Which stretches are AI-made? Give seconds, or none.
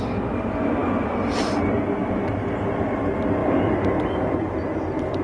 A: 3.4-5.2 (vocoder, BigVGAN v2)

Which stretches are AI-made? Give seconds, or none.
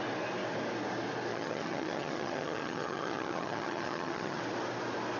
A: 1.3-4.4 (vocoder, HiFi-GAN)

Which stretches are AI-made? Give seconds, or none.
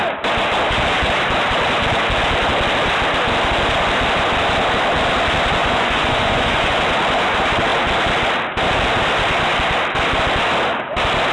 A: 5.6-6.8 (vocoder, Vocos)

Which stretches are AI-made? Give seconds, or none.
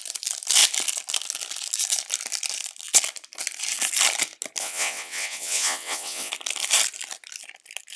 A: 4.6-6.3 (vocoder, WaveNeXt)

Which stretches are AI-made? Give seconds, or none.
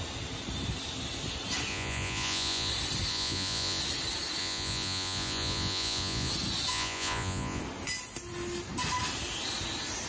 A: 1.7-2.7 (vocoder, Vocos); 3.1-3.8; 4.4-6.3; 6.7-7.6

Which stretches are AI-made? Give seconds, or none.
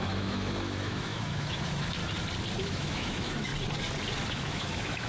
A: 0.0-2.0 (autoencoder, DAC-VAE); 2.6-3.5; 4.3-5.1